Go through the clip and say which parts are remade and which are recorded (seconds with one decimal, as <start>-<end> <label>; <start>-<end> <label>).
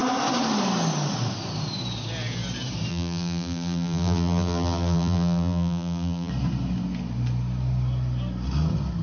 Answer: 0.0-2.9 recorded; 2.9-6.3 remade; 6.3-9.0 recorded